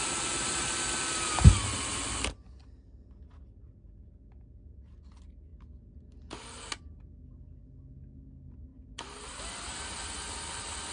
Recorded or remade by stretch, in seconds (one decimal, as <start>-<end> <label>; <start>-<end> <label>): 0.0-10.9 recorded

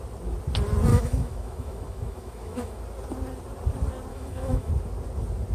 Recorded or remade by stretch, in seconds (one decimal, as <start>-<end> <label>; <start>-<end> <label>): 0.0-0.9 recorded; 0.9-2.8 remade; 2.8-4.1 recorded; 4.1-4.7 remade; 4.7-5.5 recorded

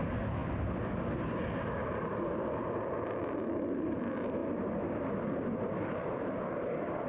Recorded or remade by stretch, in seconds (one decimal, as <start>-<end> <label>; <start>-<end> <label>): 0.0-7.1 recorded